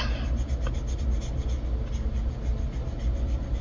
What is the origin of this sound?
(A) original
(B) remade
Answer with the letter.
A